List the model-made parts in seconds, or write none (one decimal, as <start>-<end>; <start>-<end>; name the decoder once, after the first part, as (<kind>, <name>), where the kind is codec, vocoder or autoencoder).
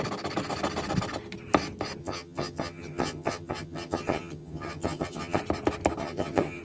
2.0-5.4 (vocoder, HiFi-GAN); 6.0-6.6